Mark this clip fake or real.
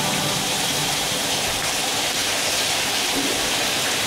fake